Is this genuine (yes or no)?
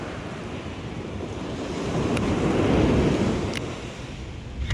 yes